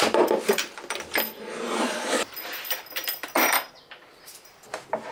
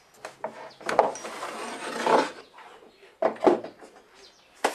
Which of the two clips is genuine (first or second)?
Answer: second